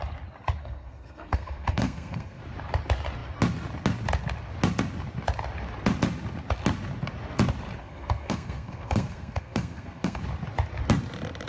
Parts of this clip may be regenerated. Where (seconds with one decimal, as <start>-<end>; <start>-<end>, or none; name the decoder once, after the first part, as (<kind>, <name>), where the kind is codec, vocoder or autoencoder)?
0.6-2.4 (codec, SNAC); 7.8-10.2